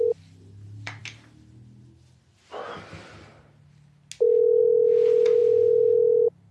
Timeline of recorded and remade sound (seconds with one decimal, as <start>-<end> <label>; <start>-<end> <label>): 0.0-6.5 recorded